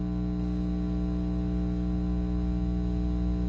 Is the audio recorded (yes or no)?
yes